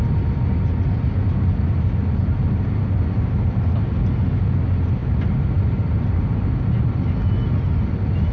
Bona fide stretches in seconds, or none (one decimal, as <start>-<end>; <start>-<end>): 0.0-5.0; 6.0-8.3